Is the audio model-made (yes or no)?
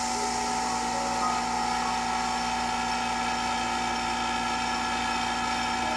no